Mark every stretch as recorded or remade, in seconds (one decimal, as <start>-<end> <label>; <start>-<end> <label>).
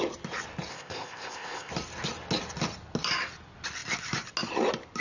0.0-0.7 recorded; 0.7-1.7 remade; 1.7-5.0 recorded